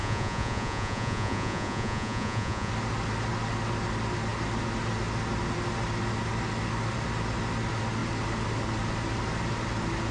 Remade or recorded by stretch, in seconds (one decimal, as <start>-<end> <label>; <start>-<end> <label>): 0.0-2.7 remade; 2.7-10.1 recorded